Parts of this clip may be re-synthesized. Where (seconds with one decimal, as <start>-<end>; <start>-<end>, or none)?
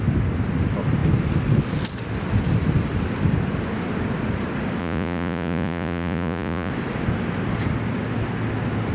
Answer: 4.8-6.7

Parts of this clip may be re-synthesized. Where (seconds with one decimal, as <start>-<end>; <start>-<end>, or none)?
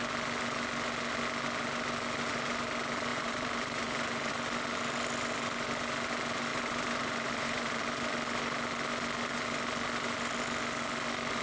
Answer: 3.1-4.3; 6.5-7.8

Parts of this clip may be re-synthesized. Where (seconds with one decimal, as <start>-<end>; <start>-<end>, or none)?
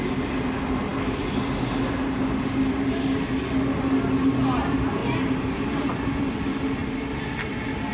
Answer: none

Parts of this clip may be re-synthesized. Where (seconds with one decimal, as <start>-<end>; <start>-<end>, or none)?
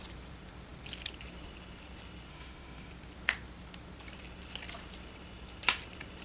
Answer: 2.3-2.9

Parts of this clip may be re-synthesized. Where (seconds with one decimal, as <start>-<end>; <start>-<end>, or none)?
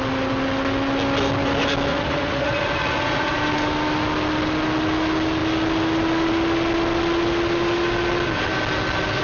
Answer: 1.9-3.4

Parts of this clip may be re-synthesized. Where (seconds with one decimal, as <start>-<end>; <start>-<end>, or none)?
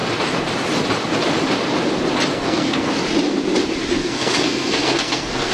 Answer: 2.3-2.9; 4.0-5.5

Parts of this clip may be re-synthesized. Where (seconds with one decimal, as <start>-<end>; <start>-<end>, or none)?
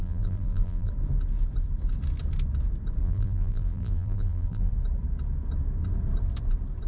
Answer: 0.0-0.9; 3.0-4.7